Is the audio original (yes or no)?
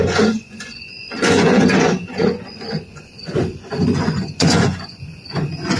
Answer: no